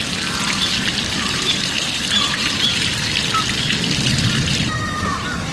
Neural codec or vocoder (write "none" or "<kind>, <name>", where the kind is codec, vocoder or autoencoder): none